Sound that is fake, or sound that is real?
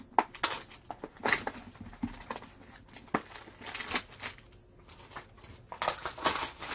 real